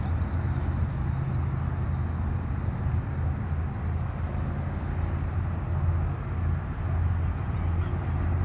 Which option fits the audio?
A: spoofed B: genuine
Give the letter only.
B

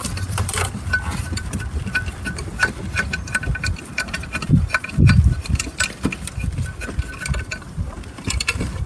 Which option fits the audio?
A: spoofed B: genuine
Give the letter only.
A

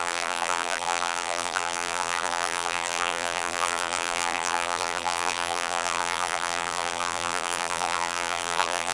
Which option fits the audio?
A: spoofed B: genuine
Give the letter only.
A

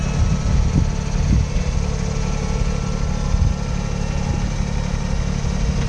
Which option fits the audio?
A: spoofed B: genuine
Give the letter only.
B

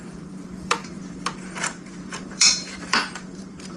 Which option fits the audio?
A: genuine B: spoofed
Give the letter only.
B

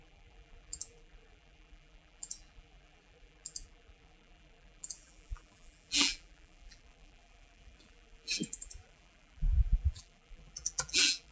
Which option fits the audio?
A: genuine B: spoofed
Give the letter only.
B